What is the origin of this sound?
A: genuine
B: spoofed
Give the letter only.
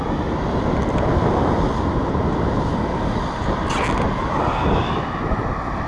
A